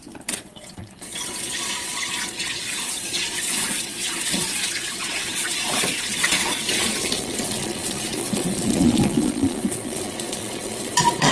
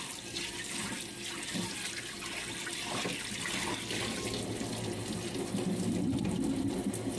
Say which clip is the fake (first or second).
first